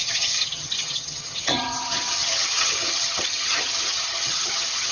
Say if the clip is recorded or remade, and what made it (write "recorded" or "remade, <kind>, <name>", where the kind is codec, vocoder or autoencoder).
remade, vocoder, HiFi-GAN